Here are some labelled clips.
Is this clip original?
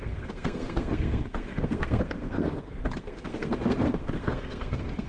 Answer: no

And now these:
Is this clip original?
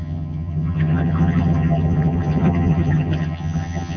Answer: no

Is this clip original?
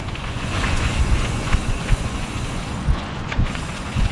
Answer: no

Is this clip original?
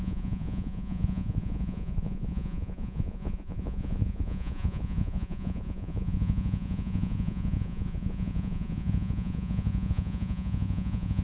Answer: no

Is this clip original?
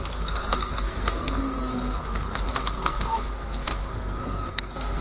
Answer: no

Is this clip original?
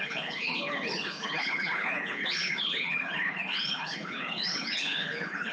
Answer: no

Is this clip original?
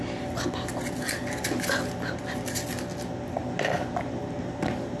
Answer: yes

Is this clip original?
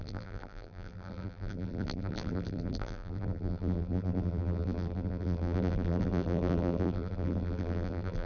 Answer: no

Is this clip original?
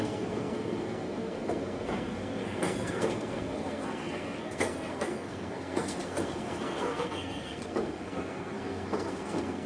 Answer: no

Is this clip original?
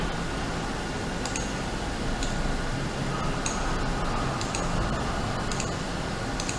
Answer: yes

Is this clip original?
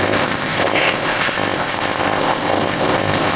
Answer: no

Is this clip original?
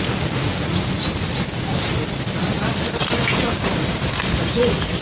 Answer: yes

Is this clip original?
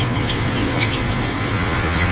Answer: no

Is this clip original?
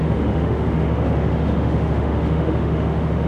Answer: no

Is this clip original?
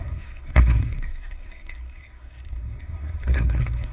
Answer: no